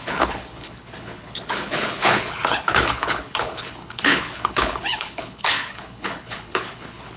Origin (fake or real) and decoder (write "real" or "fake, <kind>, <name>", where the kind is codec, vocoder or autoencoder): fake, codec, HILCodec